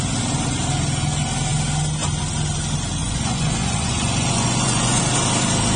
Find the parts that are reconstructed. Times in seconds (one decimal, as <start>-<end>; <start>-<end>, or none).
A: 3.0-5.0

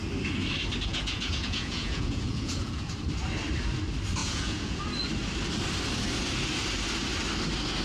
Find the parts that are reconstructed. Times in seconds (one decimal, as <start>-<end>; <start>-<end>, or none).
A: 0.9-2.9; 4.2-4.8

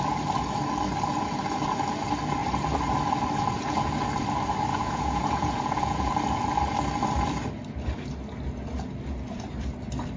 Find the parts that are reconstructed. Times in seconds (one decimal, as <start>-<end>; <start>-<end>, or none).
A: 4.7-6.1

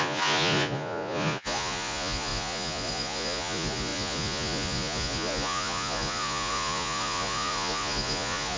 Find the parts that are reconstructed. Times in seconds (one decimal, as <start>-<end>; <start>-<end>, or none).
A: 0.0-8.6

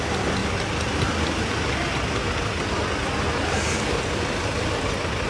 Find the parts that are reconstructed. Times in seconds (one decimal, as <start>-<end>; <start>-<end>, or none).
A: none

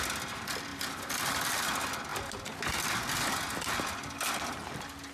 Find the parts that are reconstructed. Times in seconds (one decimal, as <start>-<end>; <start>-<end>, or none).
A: none

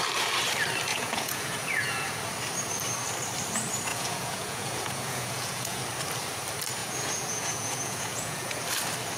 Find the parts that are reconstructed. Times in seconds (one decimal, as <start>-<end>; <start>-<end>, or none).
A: 0.9-2.2; 3.9-5.8; 6.8-8.6

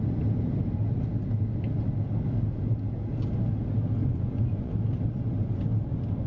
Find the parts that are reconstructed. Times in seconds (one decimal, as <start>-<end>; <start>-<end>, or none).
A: 4.0-4.7